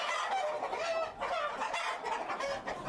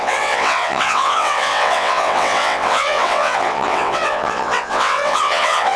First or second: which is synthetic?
second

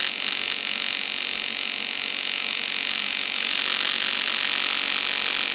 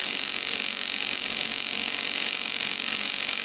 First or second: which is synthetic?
second